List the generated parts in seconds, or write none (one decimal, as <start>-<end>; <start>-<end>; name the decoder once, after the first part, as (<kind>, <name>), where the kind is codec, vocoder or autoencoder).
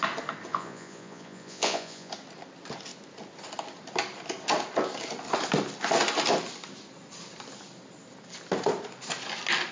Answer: 0.5-2.1 (vocoder, Vocos)